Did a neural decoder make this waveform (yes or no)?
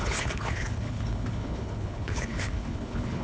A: yes